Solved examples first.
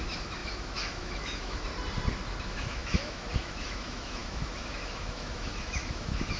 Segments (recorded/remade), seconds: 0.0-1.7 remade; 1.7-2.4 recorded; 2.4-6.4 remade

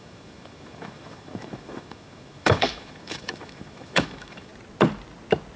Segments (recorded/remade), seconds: 0.0-4.5 remade; 4.5-5.6 recorded

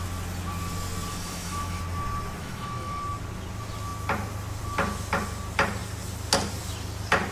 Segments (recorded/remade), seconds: 0.0-1.1 recorded; 1.1-1.8 remade; 1.8-2.4 recorded; 2.4-3.0 remade; 3.0-7.3 recorded

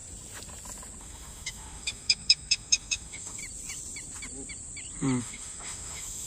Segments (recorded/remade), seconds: 0.0-1.0 recorded; 1.0-3.4 remade; 3.4-5.2 recorded; 5.2-6.3 remade

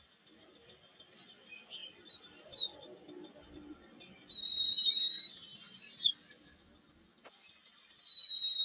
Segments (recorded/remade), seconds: 0.0-8.6 recorded

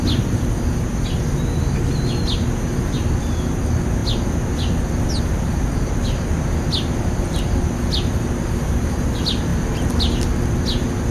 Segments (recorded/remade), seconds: 0.0-11.1 recorded

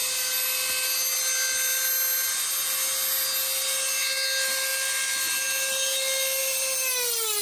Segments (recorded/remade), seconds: 0.0-7.4 recorded